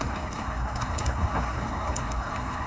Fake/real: fake